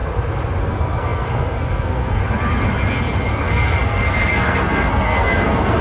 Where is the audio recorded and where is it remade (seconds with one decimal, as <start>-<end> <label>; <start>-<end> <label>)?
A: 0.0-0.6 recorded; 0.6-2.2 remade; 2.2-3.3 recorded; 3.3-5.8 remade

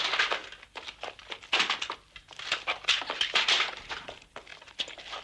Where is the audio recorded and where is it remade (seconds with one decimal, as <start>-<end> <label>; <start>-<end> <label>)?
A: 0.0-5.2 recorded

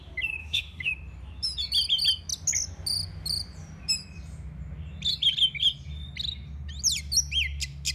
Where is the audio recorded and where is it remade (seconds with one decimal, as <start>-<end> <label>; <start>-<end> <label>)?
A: 0.0-0.4 recorded; 0.4-0.9 remade; 0.9-7.9 recorded

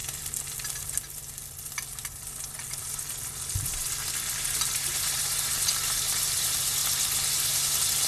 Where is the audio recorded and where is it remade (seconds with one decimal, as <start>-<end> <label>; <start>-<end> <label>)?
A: 0.0-6.8 remade; 6.8-8.1 recorded

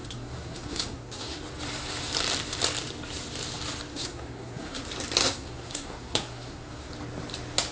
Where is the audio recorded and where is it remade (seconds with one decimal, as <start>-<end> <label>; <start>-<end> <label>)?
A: 0.0-1.4 remade; 1.4-3.9 recorded; 3.9-4.8 remade; 4.8-5.2 recorded; 5.2-6.9 remade; 6.9-7.7 recorded

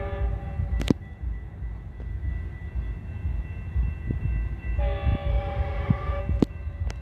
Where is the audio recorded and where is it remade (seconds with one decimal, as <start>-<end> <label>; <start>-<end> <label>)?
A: 0.0-5.3 recorded; 5.3-6.2 remade; 6.2-7.0 recorded